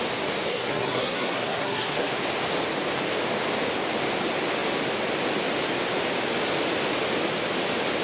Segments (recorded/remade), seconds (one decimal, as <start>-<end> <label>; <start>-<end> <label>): 0.0-0.5 recorded; 0.5-2.1 remade; 2.1-8.0 recorded